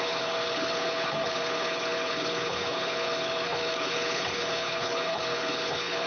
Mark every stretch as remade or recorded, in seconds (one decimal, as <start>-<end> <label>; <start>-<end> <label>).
0.0-6.1 remade